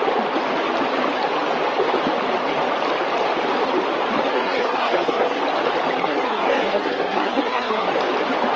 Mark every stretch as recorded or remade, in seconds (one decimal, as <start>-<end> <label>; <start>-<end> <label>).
0.0-4.3 recorded; 4.3-5.4 remade; 5.4-6.0 recorded; 6.0-7.9 remade; 7.9-8.6 recorded